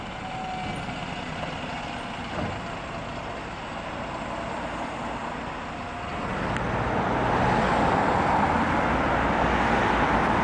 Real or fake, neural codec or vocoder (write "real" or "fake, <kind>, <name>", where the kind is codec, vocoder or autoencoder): real